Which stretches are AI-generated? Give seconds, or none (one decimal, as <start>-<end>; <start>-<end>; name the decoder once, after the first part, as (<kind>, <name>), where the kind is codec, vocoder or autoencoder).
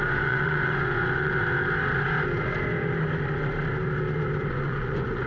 0.0-1.4 (vocoder, Vocos); 4.5-5.3